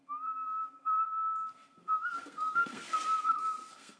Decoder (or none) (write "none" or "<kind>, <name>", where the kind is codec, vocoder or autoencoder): codec, SNAC